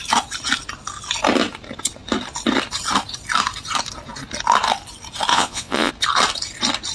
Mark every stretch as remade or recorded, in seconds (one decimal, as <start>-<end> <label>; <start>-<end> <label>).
0.0-5.3 recorded; 5.3-5.9 remade; 5.9-6.9 recorded